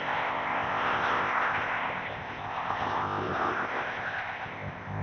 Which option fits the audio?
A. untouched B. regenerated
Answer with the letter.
B